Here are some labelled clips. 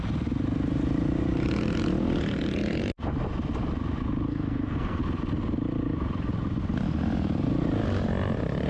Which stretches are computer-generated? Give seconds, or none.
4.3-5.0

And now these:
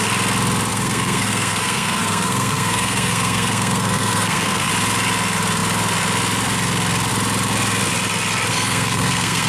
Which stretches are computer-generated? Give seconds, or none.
0.7-4.7; 8.5-9.5

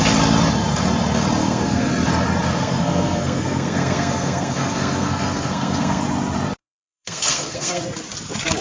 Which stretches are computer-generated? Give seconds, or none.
1.4-1.9; 2.6-6.0; 6.6-7.8

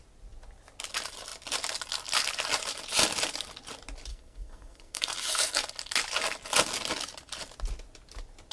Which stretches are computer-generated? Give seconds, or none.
4.1-5.7

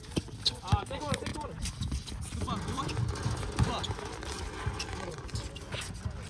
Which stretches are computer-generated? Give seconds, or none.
none

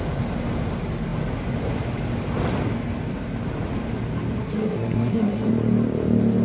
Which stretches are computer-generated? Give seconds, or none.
4.4-5.5

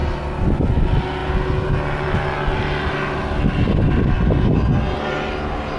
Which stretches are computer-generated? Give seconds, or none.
none